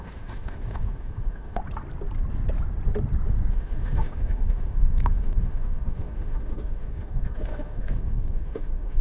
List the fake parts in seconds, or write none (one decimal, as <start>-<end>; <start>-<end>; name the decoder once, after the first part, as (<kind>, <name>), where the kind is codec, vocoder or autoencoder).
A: 0.0-1.6 (autoencoder, DAC-VAE); 3.5-9.0